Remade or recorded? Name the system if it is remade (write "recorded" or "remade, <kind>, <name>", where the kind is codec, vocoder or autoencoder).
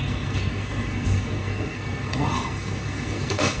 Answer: remade, codec, SNAC